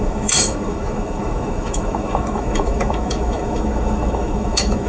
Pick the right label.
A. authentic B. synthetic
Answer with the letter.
B